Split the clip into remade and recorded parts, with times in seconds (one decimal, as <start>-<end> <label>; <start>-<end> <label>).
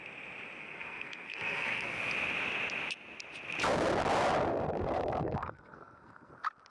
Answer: 0.0-0.6 recorded; 0.6-2.0 remade; 2.0-4.5 recorded; 4.5-6.3 remade; 6.3-6.7 recorded